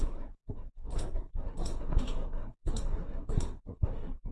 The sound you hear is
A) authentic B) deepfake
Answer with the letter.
B